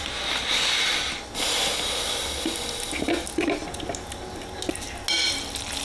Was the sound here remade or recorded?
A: recorded